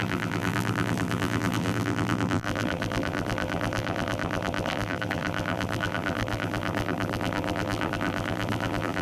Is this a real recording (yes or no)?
no